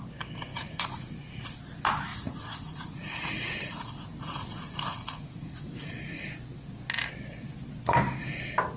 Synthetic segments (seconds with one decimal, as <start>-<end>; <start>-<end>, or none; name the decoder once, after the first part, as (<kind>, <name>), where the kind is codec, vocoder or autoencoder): 0.5-1.1 (vocoder, Vocos); 2.1-6.3